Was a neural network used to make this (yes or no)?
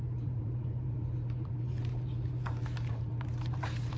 yes